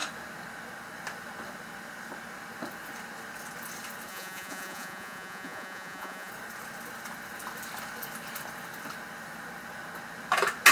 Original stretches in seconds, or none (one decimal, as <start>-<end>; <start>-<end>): 0.0-4.1; 6.3-10.7

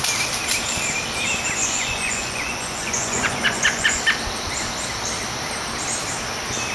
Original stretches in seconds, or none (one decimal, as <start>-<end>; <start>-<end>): 0.0-1.6; 4.0-6.7

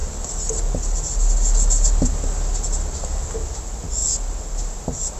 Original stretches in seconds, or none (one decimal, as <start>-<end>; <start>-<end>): 0.0-5.2

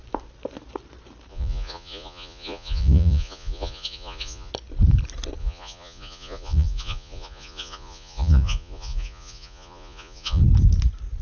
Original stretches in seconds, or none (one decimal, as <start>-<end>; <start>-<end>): 0.0-1.3; 4.5-5.4; 10.4-11.2

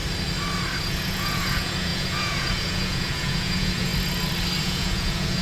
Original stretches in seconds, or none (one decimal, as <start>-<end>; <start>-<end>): 0.0-0.8; 3.9-4.6